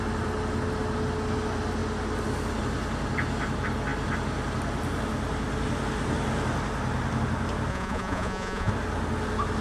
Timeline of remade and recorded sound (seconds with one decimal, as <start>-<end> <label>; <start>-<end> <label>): 0.0-7.7 recorded; 7.7-8.7 remade; 8.7-9.6 recorded